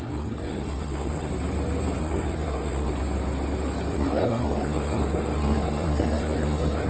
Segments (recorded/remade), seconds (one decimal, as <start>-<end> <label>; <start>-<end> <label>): 0.0-1.3 remade; 1.3-2.0 recorded; 2.0-2.9 remade; 2.9-3.9 recorded; 3.9-6.9 remade